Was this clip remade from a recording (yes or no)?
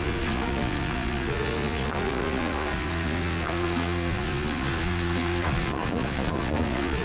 yes